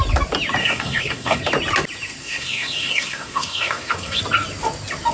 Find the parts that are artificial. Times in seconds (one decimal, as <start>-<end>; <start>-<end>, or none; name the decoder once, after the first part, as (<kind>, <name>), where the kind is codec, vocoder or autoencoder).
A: 0.6-1.4 (codec, SNAC); 2.2-4.2

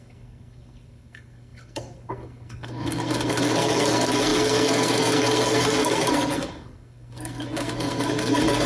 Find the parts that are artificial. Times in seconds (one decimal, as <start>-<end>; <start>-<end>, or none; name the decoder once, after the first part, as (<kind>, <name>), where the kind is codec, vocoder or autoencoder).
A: 0.0-8.7 (codec, SNAC)

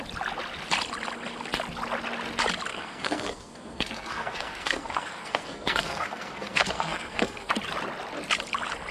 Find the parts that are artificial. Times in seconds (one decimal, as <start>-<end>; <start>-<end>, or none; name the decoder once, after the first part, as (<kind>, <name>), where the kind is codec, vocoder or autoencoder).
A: 2.7-7.5 (codec, SNAC)

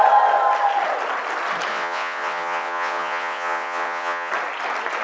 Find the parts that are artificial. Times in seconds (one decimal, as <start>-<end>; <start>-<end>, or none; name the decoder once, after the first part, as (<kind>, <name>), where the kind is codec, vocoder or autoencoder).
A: 1.7-4.3 (vocoder, WaveNeXt)

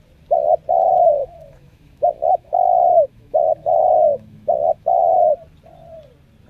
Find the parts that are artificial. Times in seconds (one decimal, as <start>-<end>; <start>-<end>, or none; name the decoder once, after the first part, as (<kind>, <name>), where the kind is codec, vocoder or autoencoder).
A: 1.2-5.1 (autoencoder, DAC-VAE)

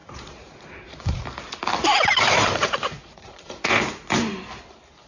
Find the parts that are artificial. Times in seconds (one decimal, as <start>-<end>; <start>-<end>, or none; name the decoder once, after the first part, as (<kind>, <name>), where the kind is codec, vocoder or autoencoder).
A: 0.0-1.2 (vocoder, Vocos); 2.3-3.8